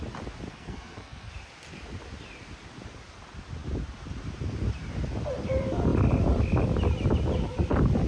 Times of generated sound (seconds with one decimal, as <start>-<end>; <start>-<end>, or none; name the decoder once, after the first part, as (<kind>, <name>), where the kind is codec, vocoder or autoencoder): 0.5-1.3 (codec, SNAC)